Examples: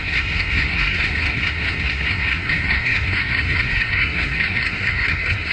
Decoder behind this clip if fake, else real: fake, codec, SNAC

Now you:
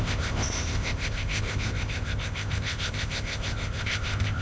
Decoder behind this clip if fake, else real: fake, codec, ZipCodec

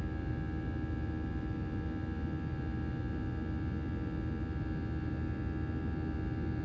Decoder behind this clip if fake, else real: real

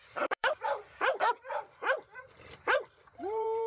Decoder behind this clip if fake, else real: fake, vocoder, BigVGAN v2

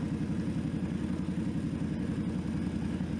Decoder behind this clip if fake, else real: real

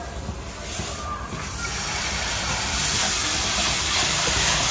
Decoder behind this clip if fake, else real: fake, vocoder, BigVGAN v2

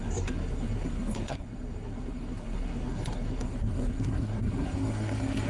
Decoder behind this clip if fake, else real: fake, codec, SNAC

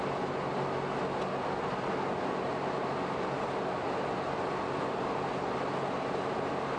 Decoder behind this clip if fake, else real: real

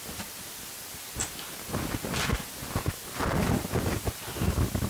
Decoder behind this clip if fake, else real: real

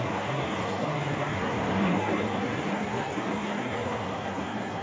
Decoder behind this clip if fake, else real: fake, codec, SNAC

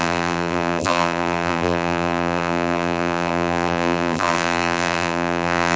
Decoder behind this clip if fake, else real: fake, vocoder, BigVGAN v2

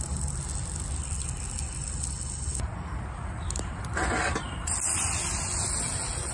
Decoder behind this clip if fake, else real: real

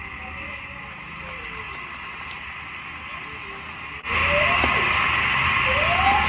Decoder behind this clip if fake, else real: real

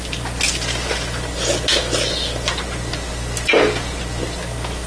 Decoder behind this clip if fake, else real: real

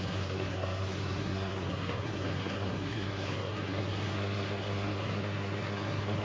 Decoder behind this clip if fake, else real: fake, codec, SNAC